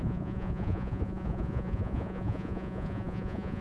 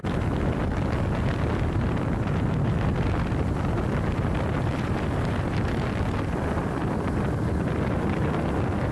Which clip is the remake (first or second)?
first